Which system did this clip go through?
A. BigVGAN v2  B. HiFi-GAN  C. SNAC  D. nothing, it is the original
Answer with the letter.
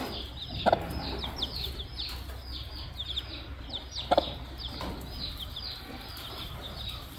D